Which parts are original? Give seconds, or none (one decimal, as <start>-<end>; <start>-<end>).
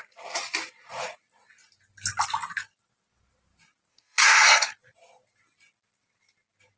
0.0-3.9; 4.7-6.8